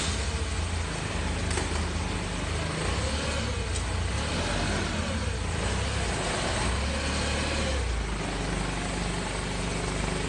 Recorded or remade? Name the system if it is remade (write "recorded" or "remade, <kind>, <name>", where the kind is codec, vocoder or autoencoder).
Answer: recorded